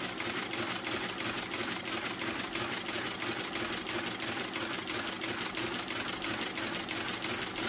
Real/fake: real